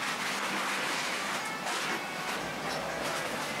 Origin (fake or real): real